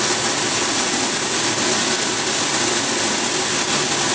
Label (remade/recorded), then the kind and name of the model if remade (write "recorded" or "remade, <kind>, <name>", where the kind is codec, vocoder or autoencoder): recorded